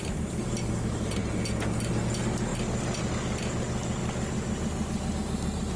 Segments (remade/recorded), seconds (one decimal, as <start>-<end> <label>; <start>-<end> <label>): 0.0-5.8 recorded